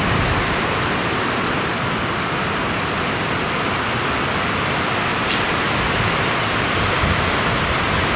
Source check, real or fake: real